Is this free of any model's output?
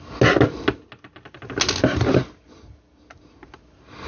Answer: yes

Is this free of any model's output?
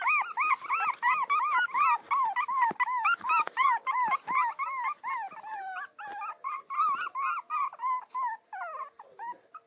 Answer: yes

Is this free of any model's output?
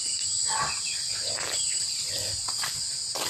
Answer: yes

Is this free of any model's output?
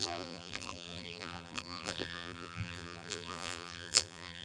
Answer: no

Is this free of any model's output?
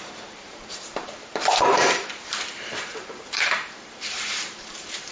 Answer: no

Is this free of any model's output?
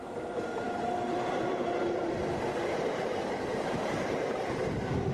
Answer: no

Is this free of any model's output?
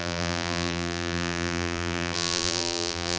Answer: no